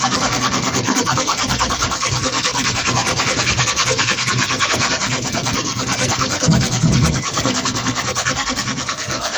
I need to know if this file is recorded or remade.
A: remade